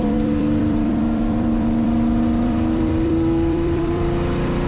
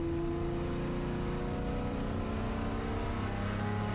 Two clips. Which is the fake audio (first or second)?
first